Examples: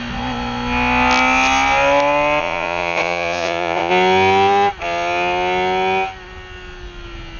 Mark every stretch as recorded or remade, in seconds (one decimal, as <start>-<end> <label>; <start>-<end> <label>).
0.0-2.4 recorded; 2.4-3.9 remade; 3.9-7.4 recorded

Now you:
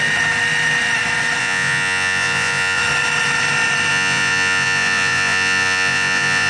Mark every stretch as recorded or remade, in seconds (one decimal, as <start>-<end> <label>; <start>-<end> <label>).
0.0-1.4 recorded; 1.4-2.8 remade; 2.8-3.9 recorded; 3.9-6.5 remade

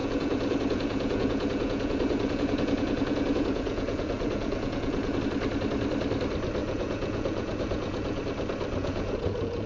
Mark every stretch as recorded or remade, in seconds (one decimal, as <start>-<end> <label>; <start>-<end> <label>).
0.0-5.2 remade; 5.2-6.6 recorded; 6.6-8.2 remade; 8.2-8.8 recorded; 8.8-9.7 remade